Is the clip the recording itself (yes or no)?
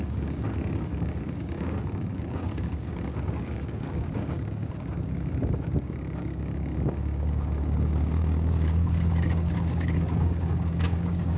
no